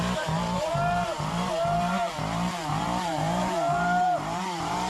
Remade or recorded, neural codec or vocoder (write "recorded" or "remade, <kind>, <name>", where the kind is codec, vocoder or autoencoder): remade, vocoder, BigVGAN v2